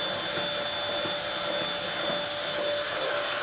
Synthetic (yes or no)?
no